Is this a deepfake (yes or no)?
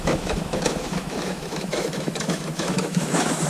yes